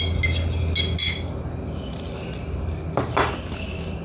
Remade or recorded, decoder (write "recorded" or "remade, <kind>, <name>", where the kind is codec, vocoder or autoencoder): recorded